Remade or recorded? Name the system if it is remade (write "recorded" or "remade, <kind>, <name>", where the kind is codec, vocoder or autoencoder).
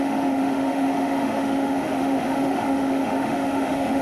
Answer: remade, autoencoder, DAC-VAE